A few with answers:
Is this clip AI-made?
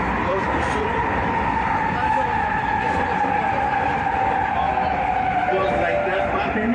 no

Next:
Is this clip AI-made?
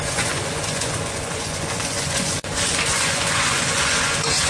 yes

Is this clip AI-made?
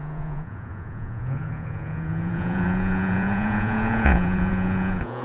yes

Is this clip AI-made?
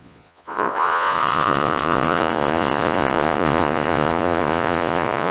yes